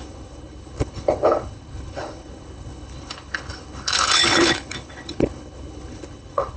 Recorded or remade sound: remade